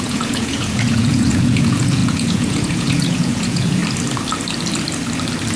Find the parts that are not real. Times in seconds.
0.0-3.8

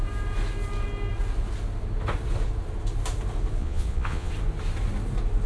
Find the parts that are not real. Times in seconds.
3.6-4.3

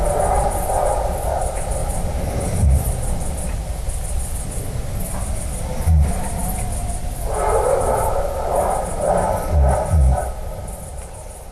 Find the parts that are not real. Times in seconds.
none

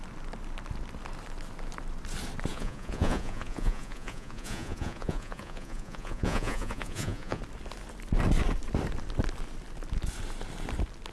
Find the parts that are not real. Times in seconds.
2.5-7.4

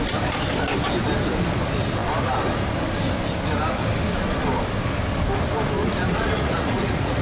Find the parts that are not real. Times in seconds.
5.8-7.2